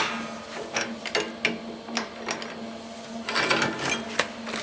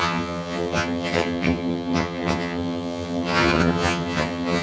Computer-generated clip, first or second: second